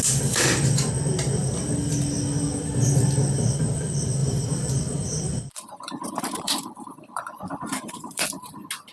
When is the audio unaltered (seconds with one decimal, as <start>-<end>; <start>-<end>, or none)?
0.0-4.2; 8.2-8.9